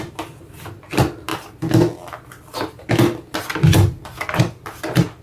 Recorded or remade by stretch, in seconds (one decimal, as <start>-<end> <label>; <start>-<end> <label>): 0.0-5.2 recorded